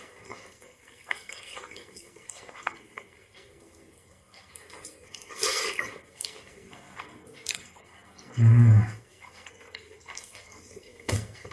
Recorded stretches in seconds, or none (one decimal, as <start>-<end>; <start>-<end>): none